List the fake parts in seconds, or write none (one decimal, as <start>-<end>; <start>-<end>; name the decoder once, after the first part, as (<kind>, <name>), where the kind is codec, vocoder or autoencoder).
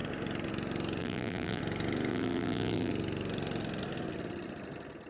1.0-1.6 (vocoder, BigVGAN v2); 2.1-2.9